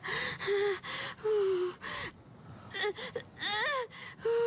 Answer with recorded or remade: recorded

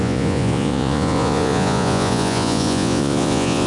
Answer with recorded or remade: remade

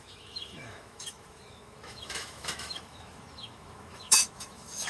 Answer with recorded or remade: remade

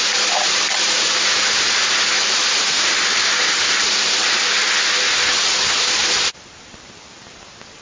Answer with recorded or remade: recorded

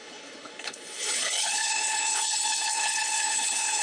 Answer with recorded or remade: remade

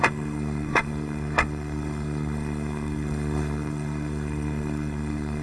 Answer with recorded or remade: remade